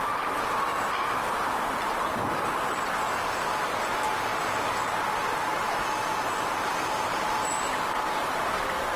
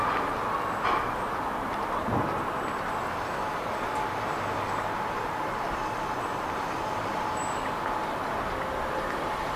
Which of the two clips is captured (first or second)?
second